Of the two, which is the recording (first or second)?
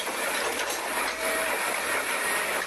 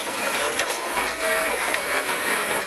first